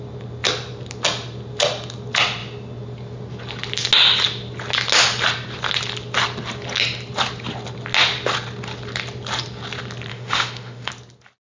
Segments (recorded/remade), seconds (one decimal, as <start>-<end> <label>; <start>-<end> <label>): 0.0-10.1 recorded; 10.1-10.9 remade; 10.9-11.4 recorded